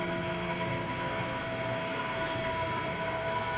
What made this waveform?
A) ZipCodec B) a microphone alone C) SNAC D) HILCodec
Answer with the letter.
C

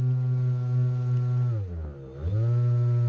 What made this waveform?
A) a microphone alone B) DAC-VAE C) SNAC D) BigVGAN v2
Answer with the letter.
A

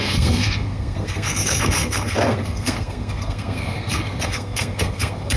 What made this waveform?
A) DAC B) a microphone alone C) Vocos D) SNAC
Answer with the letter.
D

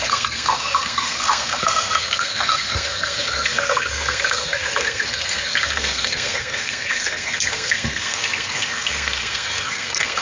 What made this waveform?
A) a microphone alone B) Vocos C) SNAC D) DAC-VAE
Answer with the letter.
C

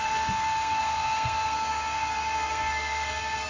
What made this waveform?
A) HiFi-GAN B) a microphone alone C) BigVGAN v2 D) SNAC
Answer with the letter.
D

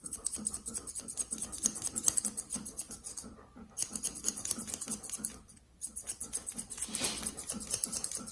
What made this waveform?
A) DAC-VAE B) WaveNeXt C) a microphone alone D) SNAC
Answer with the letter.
C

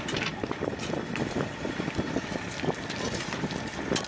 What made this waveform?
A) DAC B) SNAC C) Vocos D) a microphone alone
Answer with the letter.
D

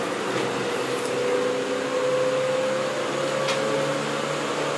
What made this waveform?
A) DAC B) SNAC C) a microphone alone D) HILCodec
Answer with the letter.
C